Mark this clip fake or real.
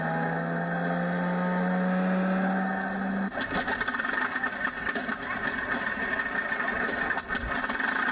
real